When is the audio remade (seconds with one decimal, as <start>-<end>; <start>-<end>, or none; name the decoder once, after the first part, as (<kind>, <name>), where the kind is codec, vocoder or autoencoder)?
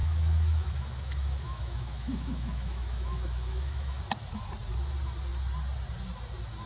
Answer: 0.0-4.0 (autoencoder, DAC-VAE)